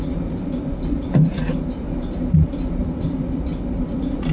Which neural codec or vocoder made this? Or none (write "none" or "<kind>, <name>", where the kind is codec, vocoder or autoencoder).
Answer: vocoder, BigVGAN v2